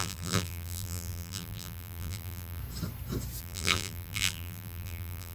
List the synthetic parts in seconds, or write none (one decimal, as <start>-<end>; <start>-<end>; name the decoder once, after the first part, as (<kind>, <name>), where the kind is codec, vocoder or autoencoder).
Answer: 0.0-2.6 (vocoder, BigVGAN v2); 3.4-5.3